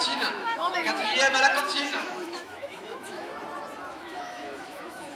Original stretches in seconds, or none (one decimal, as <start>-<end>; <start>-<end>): 1.1-1.6; 3.3-3.9